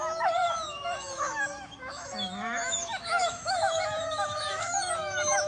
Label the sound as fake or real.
fake